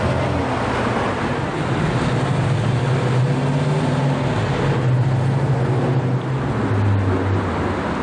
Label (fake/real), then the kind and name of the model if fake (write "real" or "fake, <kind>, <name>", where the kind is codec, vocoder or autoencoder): real